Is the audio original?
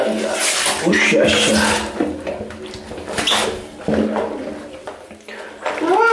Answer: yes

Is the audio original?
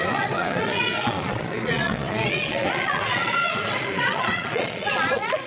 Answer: no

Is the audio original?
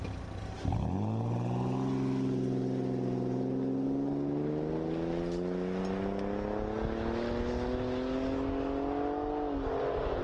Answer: yes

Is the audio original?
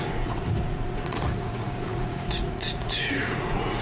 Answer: no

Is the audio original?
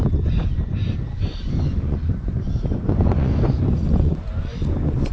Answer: no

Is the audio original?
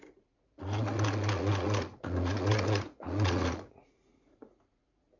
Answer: no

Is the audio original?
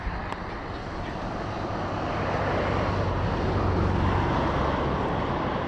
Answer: yes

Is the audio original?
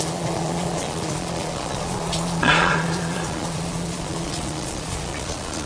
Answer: no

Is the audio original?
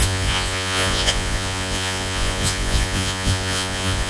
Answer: no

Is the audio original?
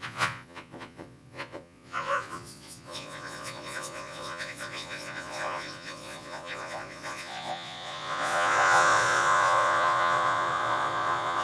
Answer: no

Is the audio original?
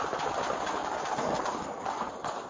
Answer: yes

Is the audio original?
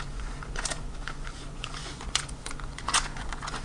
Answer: no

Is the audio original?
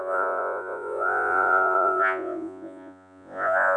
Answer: no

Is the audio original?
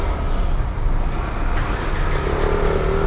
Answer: yes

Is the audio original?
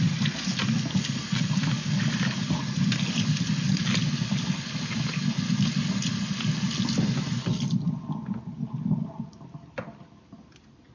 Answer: yes